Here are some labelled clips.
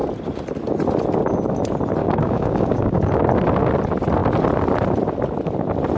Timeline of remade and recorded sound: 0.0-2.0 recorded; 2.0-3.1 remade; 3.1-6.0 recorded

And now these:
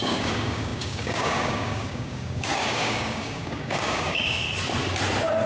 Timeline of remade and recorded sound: 0.0-4.4 remade; 4.4-5.5 recorded

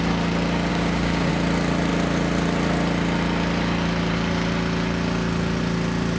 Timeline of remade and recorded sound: 0.0-0.7 recorded; 0.7-1.3 remade; 1.3-6.2 recorded

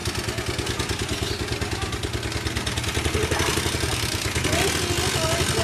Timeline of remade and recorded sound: 0.0-5.6 recorded